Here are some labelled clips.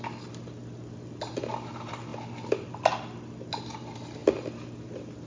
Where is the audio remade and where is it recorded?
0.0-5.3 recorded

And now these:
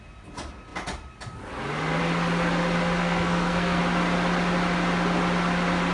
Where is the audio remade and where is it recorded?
0.0-3.0 recorded; 3.0-3.8 remade; 3.8-5.9 recorded

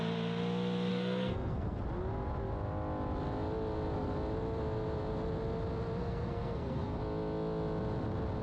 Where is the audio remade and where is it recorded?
0.0-0.9 recorded; 0.9-1.8 remade; 1.8-6.0 recorded; 6.0-7.0 remade; 7.0-8.4 recorded

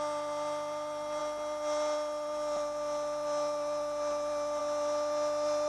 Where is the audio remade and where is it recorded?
0.0-5.7 recorded